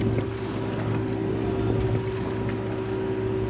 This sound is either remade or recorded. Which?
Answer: recorded